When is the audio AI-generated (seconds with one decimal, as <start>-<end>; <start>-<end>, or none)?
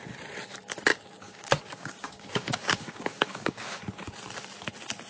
0.9-3.8